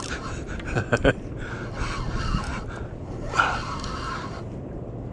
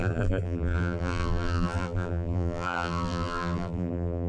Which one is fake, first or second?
second